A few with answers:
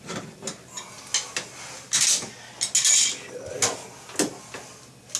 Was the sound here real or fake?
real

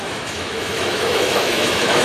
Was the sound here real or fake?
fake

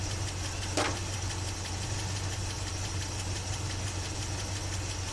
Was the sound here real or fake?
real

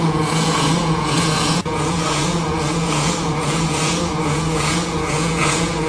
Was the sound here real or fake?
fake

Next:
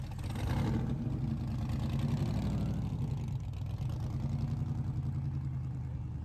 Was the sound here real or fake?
real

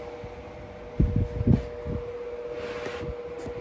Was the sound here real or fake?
real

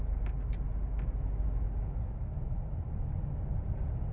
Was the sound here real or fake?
real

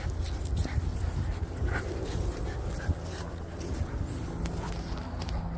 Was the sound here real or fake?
real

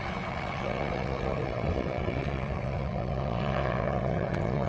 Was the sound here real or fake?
fake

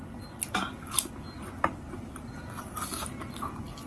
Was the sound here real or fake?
real